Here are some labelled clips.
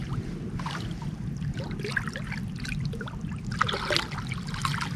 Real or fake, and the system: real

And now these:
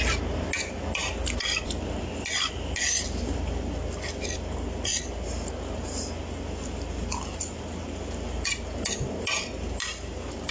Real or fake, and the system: real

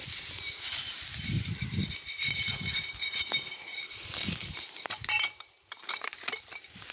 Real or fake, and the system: fake, vocoder, BigVGAN v2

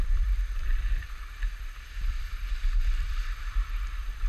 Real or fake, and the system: fake, vocoder, BigVGAN v2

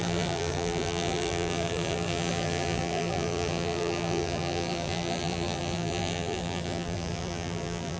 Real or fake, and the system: fake, vocoder, BigVGAN v2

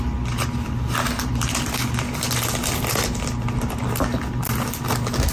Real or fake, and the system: real